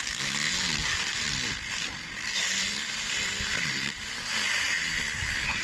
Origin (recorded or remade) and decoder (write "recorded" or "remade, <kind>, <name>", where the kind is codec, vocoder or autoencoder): recorded